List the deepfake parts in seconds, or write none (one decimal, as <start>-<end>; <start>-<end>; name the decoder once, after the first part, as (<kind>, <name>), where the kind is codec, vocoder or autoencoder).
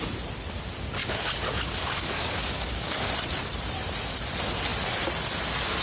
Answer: 1.0-3.1 (codec, DAC)